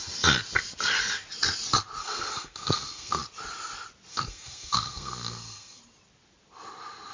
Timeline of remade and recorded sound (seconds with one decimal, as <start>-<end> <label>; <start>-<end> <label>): 0.0-2.0 recorded; 2.0-3.2 remade; 3.2-4.1 recorded; 4.1-5.8 remade; 5.8-7.1 recorded